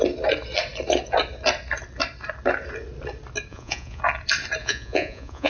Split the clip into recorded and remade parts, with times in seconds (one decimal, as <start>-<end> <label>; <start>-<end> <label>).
0.0-3.5 recorded; 3.5-4.0 remade; 4.0-4.6 recorded; 4.6-5.5 remade